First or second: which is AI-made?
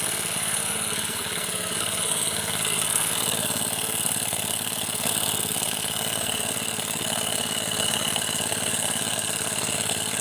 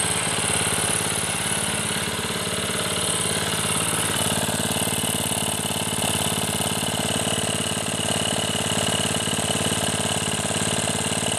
first